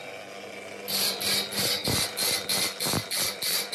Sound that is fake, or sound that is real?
real